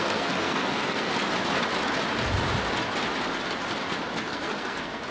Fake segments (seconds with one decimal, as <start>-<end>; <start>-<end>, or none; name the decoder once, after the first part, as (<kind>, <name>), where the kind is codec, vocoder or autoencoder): 0.0-1.1 (codec, SNAC); 4.2-5.1